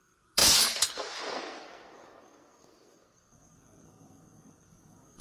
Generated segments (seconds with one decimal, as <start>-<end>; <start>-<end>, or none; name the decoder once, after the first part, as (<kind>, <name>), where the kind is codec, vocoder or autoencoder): 0.0-5.2 (codec, SNAC)